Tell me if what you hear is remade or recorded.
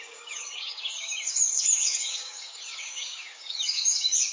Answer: remade